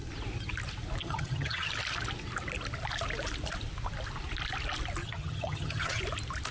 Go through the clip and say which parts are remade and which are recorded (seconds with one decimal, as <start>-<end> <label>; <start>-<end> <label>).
0.0-1.0 recorded; 1.0-1.7 remade; 1.7-5.0 recorded; 5.0-6.0 remade; 6.0-6.5 recorded